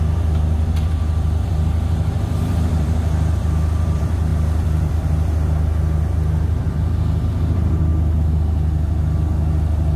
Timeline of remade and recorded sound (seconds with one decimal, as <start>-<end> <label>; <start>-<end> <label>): 0.0-7.9 remade; 7.9-10.0 recorded